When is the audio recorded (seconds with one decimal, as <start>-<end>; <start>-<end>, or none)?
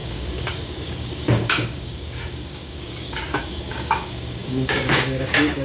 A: none